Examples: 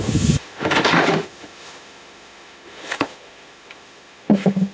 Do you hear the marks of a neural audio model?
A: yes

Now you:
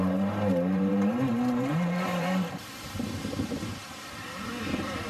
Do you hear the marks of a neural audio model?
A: yes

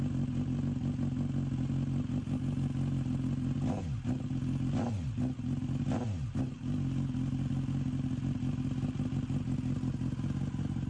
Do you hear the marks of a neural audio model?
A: no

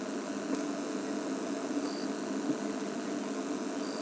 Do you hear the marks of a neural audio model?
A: no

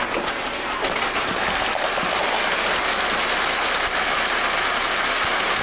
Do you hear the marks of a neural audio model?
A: no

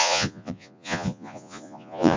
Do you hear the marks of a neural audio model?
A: yes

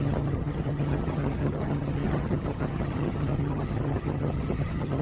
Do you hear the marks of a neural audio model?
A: yes